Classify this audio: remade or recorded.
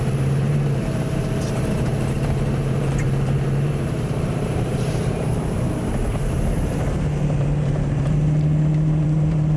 remade